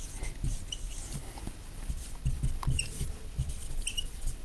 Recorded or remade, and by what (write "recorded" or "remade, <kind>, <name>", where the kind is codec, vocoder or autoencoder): recorded